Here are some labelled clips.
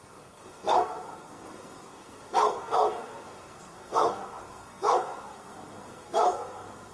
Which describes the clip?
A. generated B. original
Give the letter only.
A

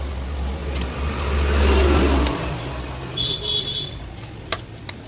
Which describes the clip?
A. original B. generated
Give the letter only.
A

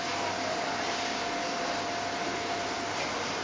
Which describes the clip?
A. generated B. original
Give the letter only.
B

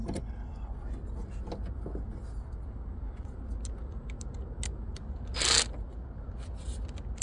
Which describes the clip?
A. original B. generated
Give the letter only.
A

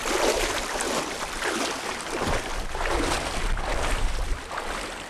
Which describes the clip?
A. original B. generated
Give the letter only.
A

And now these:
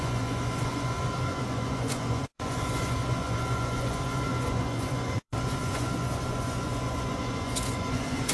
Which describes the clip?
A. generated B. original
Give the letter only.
A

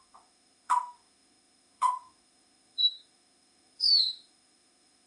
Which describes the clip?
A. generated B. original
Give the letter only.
A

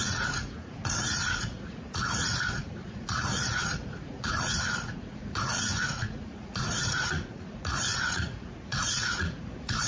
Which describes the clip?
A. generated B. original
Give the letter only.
A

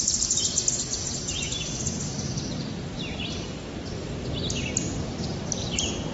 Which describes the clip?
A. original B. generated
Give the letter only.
A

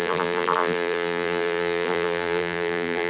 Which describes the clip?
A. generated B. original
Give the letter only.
A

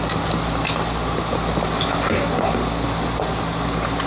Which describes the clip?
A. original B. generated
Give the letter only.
A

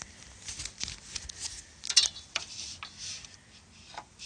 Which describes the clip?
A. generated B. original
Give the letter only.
B